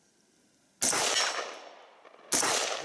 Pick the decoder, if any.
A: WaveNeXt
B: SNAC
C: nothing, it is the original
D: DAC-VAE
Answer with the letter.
C